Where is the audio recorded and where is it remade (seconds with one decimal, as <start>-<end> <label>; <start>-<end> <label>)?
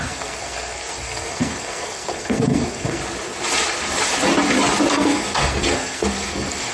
0.0-3.0 remade; 3.0-4.9 recorded; 4.9-6.7 remade